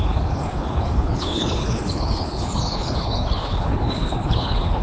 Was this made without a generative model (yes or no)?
no